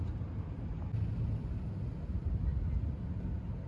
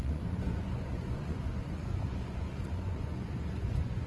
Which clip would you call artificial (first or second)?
second